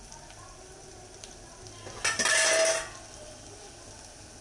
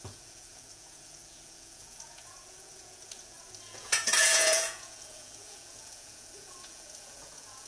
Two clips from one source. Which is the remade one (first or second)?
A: second